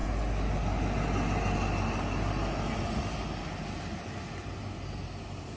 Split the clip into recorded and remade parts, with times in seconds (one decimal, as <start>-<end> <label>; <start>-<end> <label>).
0.0-5.6 recorded